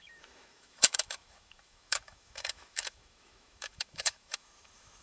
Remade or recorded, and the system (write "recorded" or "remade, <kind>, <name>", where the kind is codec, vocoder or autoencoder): remade, autoencoder, DAC-VAE